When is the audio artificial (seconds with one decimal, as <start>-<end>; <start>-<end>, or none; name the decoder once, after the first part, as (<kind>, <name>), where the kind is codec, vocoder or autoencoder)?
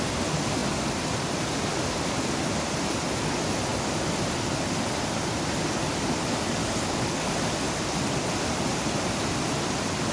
6.6-7.3 (codec, DAC)